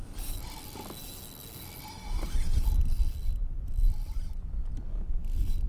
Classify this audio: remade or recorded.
recorded